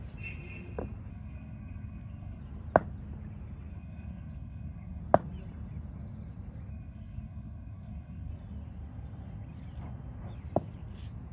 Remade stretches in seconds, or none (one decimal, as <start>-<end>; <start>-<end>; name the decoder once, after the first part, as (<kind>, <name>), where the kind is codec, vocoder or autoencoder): 1.1-2.4 (codec, SNAC); 3.7-5.0; 6.7-8.3